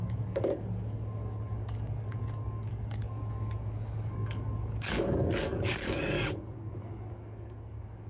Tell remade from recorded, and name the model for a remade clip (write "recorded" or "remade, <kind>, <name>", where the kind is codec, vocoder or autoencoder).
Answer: remade, codec, DAC